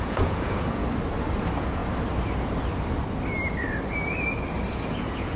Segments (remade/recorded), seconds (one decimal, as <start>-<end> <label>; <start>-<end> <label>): 0.0-0.8 remade; 0.8-1.4 recorded; 1.4-1.8 remade; 1.8-4.7 recorded; 4.7-5.4 remade